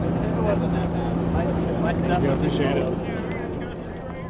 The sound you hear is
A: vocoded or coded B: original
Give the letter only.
B